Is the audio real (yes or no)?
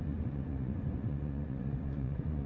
no